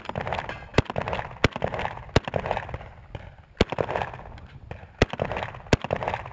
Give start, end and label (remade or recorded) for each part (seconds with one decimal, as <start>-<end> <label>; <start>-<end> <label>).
0.0-6.3 recorded